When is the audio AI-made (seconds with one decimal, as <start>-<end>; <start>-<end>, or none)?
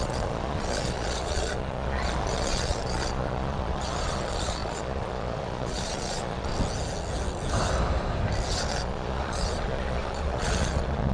0.0-6.5; 8.7-11.1